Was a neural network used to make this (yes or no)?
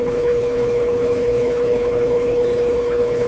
yes